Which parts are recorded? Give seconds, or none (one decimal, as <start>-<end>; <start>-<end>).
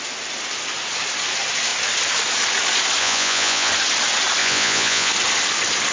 0.0-3.0; 3.7-4.4; 5.1-5.9